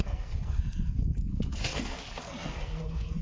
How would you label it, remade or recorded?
remade